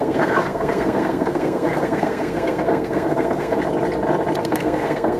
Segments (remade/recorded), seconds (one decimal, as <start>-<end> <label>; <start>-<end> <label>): 0.0-3.6 remade; 3.6-4.4 recorded; 4.4-5.2 remade